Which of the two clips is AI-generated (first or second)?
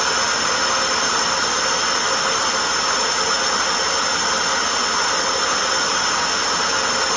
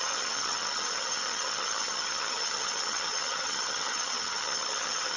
second